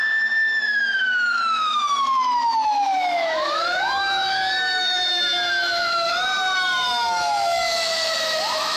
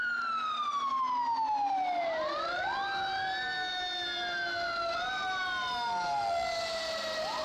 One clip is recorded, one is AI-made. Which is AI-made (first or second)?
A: first